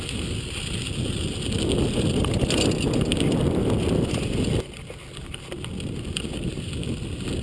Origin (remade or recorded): recorded